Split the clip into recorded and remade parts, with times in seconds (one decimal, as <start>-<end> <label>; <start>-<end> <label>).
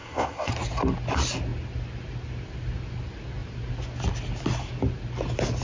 0.0-0.5 remade; 0.5-5.6 recorded